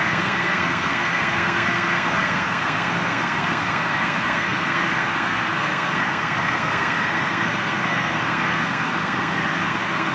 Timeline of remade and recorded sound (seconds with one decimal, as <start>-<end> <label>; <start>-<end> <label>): 0.0-10.1 remade